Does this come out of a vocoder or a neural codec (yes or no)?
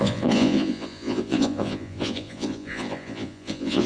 yes